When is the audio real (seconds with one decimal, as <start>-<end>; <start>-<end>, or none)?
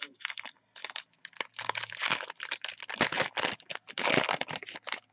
0.0-5.1